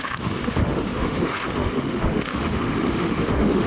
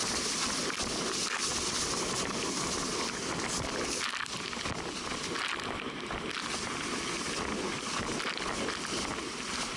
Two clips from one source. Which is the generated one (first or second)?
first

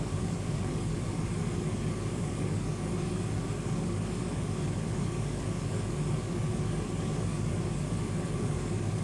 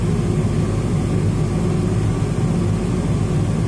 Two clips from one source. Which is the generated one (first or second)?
first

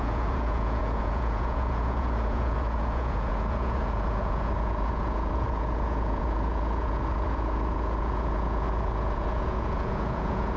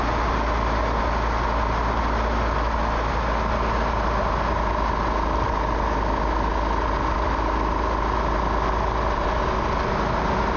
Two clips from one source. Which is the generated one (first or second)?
first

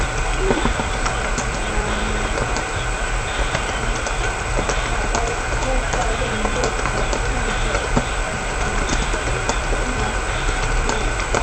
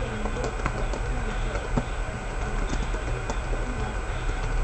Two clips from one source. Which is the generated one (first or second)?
first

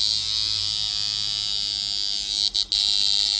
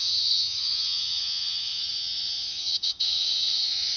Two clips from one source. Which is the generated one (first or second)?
second